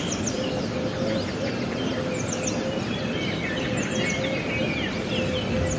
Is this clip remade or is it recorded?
recorded